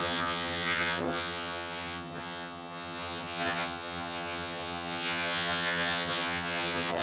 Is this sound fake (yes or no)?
yes